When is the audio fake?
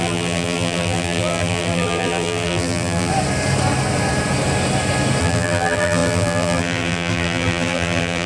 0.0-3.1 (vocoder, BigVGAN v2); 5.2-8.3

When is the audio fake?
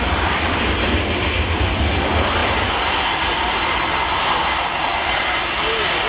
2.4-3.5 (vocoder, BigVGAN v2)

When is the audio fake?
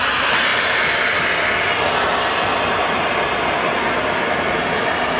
none